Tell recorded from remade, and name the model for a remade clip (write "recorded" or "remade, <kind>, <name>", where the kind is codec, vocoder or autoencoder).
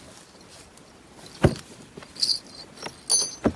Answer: recorded